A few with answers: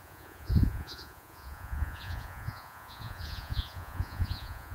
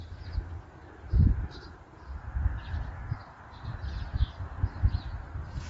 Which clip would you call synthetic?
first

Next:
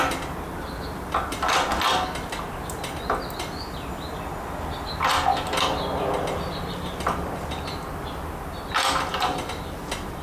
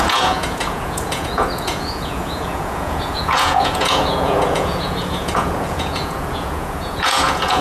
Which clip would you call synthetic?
second